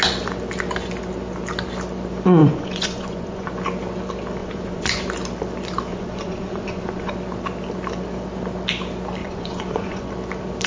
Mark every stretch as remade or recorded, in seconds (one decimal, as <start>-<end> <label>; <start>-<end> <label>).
0.0-2.4 recorded; 2.4-3.5 remade; 3.5-4.4 recorded; 4.4-5.0 remade; 5.0-5.9 recorded; 5.9-7.1 remade; 7.1-9.2 recorded; 9.2-10.1 remade; 10.1-10.7 recorded